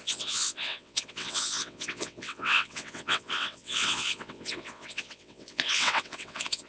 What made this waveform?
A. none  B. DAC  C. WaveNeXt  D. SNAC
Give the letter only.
C